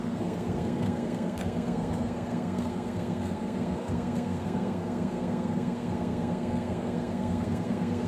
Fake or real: fake